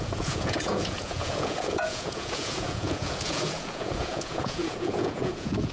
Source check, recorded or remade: remade